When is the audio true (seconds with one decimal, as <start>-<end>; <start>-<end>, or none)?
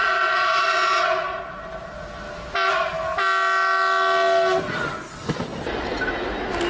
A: 1.4-6.7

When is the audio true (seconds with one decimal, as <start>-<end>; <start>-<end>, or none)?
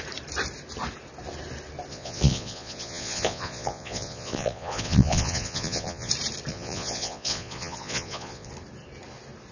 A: 0.0-1.9; 6.1-6.5; 8.5-9.5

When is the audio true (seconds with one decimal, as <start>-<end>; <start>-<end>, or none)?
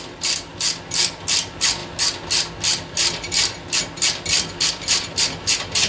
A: 0.0-5.9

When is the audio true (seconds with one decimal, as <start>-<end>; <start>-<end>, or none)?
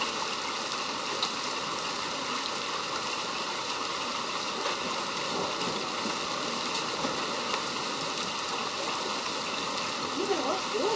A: 0.0-11.0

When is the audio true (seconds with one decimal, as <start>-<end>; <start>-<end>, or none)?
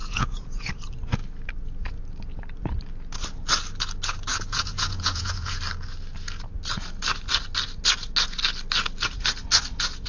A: 0.7-4.3; 5.6-10.1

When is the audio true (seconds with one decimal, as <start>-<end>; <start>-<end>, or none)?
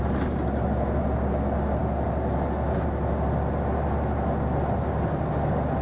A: 0.0-5.8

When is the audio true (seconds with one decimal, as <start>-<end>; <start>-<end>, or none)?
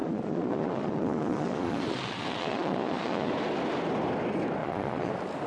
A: 3.3-4.6; 5.1-5.5